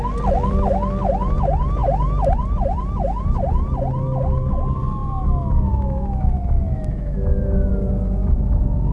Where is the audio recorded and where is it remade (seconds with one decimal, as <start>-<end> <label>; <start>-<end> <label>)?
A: 0.0-5.0 recorded; 5.0-7.7 remade; 7.7-8.2 recorded; 8.2-8.9 remade